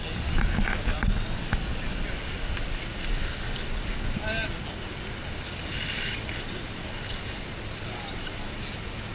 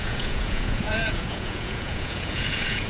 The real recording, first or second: first